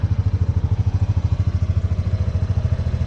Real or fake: fake